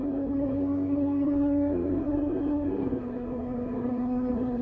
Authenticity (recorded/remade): remade